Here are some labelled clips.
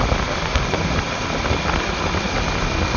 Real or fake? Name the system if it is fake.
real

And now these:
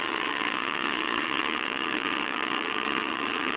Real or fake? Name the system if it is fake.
fake, vocoder, Vocos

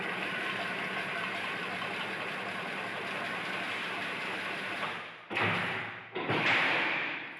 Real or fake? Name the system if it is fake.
real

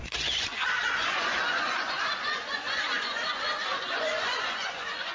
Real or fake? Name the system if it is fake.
fake, vocoder, Vocos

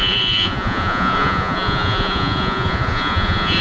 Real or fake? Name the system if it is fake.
fake, vocoder, Vocos